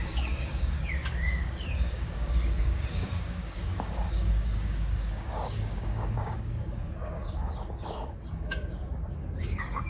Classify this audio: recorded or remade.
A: remade